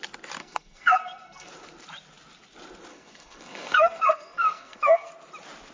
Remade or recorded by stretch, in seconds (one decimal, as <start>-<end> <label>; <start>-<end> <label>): 0.0-0.4 recorded; 0.4-1.5 remade; 1.5-2.9 recorded; 2.9-5.1 remade; 5.1-5.7 recorded